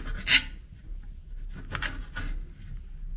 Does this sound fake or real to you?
real